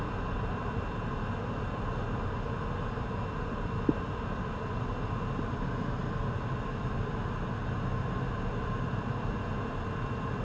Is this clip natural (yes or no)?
yes